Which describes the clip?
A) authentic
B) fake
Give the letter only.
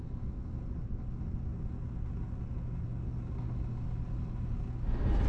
A